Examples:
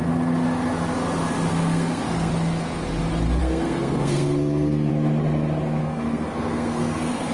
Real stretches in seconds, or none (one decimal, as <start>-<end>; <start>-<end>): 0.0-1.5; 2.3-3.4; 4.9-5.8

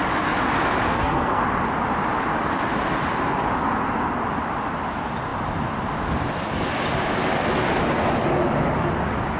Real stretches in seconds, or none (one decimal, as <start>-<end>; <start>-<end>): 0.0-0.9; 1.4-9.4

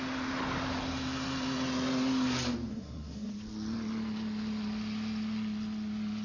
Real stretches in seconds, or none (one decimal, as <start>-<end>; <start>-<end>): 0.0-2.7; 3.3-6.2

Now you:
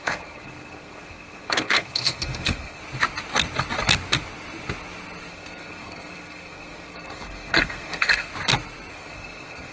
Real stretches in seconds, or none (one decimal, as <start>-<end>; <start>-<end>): 2.8-5.3; 8.3-8.9